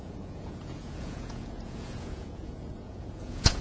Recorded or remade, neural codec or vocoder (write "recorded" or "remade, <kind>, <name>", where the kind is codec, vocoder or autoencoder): remade, vocoder, Vocos